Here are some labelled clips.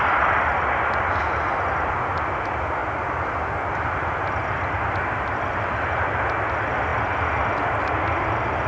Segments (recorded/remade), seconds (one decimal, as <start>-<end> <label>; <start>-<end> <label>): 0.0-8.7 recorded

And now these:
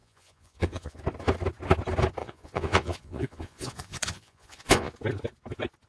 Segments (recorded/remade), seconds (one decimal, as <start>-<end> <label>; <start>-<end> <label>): 0.0-1.0 remade; 1.0-2.2 recorded; 2.2-4.9 remade; 4.9-5.9 recorded

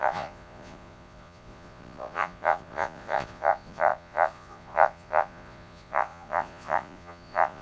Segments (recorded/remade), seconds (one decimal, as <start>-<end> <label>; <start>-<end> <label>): 0.0-7.6 remade

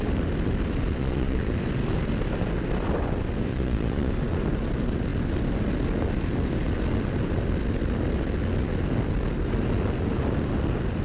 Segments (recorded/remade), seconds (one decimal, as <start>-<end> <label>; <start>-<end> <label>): 0.0-1.0 recorded; 1.0-1.5 remade; 1.5-3.5 recorded; 3.5-4.1 remade; 4.1-11.0 recorded